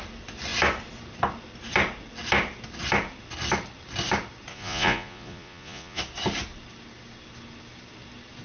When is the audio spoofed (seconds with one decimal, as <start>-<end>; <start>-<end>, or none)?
4.5-6.0